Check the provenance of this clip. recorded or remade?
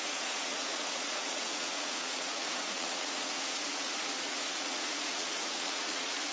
remade